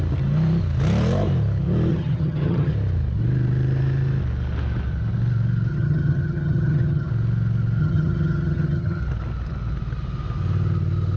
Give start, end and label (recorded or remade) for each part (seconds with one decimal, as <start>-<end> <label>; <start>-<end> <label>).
0.0-1.9 recorded; 1.9-2.7 remade; 2.7-5.7 recorded; 5.7-7.1 remade; 7.1-7.8 recorded; 7.8-9.0 remade; 9.0-11.2 recorded